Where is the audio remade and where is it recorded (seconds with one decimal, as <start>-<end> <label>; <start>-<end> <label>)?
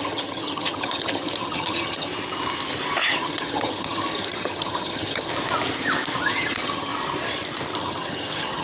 0.0-2.1 remade; 2.1-3.1 recorded; 3.1-5.3 remade; 5.3-6.2 recorded; 6.2-6.9 remade; 6.9-7.8 recorded; 7.8-8.6 remade